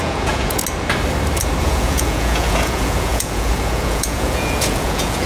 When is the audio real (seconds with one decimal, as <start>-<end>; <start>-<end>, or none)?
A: 0.6-1.6